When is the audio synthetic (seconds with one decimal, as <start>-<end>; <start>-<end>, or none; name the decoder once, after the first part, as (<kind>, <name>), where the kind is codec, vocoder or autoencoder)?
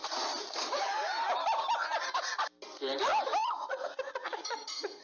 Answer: 3.4-5.0 (vocoder, Vocos)